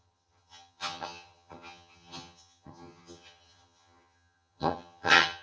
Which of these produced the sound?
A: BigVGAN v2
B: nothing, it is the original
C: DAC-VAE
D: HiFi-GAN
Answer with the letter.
D